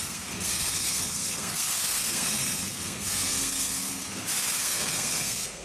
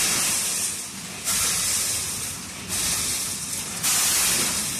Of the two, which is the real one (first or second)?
second